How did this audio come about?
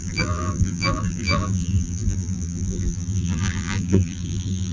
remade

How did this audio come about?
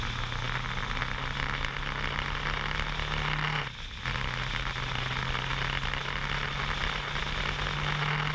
recorded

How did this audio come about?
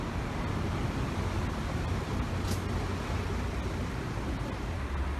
recorded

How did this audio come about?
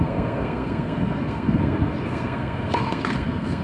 remade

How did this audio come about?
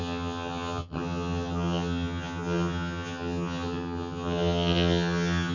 remade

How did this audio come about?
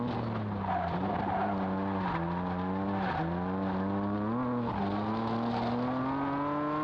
recorded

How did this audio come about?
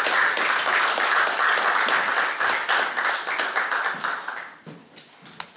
recorded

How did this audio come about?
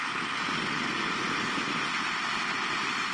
recorded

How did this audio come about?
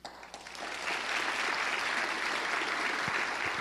recorded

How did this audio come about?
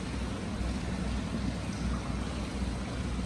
recorded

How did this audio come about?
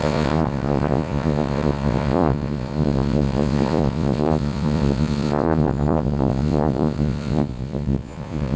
remade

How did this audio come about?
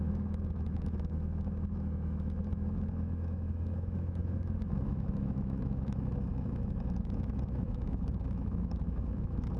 remade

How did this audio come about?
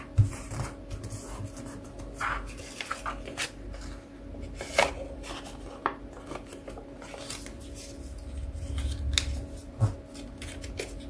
recorded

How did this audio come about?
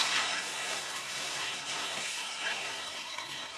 remade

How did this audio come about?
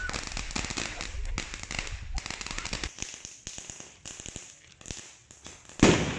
recorded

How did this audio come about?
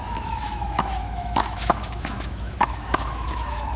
remade